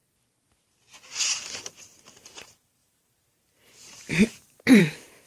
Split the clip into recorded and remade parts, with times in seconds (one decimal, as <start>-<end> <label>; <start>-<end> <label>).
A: 0.0-1.4 recorded; 1.4-5.3 remade